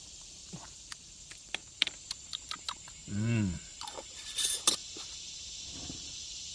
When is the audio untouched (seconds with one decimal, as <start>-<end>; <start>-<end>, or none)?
4.8-6.5